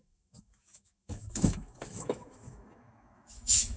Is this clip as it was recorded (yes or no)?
no